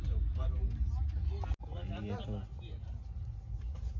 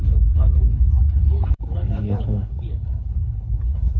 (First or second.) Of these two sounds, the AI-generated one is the second